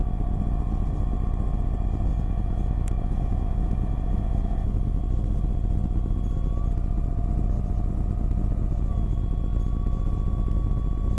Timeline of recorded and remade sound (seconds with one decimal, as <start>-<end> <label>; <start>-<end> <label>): 0.0-2.1 recorded; 2.1-5.0 remade; 5.0-11.2 recorded